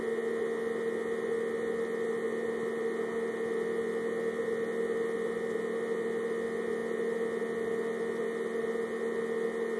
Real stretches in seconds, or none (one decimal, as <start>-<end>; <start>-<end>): 0.0-9.8

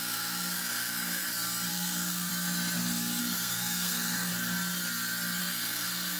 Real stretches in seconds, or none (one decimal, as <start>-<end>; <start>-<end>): 1.2-1.7; 2.3-3.2; 4.3-5.4

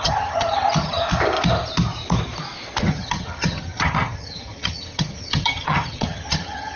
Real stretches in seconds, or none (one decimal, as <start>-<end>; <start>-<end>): 1.0-2.8

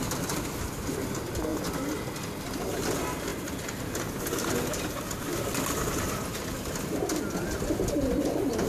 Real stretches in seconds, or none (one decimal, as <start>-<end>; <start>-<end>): 0.0-8.7

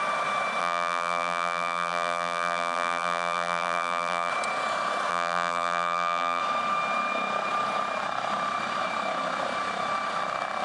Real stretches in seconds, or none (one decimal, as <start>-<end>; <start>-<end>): 0.0-0.6; 4.3-5.1; 6.4-10.6